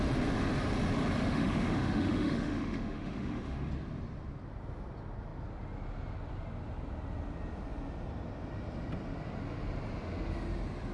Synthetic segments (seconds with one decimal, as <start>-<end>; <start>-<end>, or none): 1.2-3.7